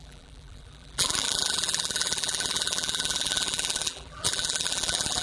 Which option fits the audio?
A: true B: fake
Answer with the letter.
B